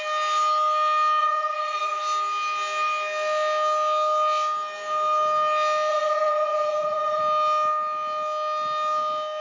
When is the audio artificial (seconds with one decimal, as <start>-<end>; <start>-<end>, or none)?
1.2-2.0; 5.9-7.2